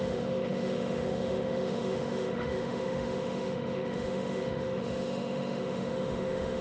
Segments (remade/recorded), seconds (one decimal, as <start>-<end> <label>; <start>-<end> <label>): 0.0-6.6 remade